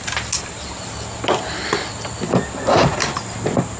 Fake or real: real